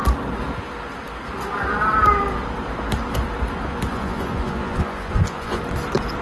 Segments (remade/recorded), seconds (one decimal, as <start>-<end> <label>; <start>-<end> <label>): 0.0-3.9 recorded; 3.9-5.6 remade; 5.6-6.2 recorded